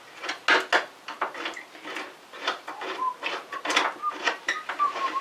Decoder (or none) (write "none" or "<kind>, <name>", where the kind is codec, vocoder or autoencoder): none